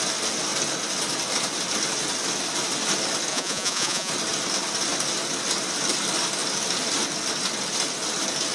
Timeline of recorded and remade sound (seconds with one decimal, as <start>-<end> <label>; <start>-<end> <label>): 0.0-3.3 recorded; 3.3-4.1 remade; 4.1-8.5 recorded